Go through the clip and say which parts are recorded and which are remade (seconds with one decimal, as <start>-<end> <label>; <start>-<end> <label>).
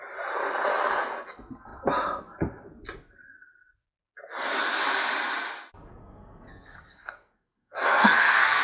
0.0-6.0 recorded; 6.0-8.6 remade